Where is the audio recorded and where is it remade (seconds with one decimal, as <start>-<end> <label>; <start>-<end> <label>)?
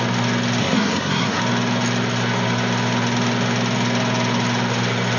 0.0-0.6 recorded; 0.6-1.4 remade; 1.4-5.2 recorded